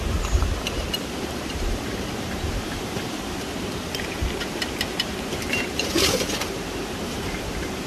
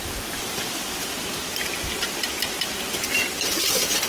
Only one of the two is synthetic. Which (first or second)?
first